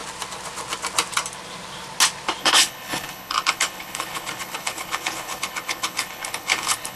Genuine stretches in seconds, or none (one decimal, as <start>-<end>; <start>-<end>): 0.0-2.4